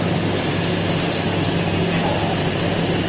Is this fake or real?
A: real